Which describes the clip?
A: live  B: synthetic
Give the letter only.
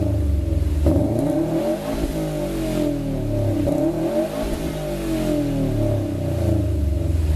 A